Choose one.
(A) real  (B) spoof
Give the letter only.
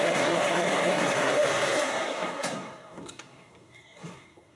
B